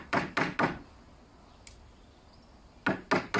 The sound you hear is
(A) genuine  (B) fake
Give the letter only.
A